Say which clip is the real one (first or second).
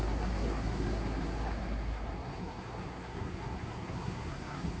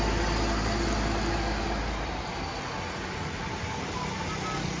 second